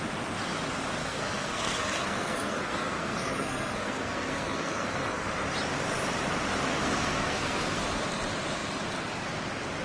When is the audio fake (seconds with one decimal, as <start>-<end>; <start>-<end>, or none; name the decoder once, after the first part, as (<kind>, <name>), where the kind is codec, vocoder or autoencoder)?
1.0-5.3 (codec, SNAC); 6.7-7.8